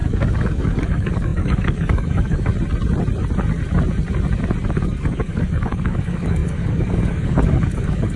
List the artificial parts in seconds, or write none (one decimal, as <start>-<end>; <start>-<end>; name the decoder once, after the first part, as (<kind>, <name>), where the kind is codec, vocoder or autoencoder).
0.0-2.5 (codec, DAC); 4.7-8.2